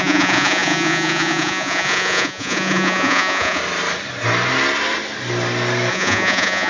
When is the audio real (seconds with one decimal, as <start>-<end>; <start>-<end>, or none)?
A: 3.6-5.9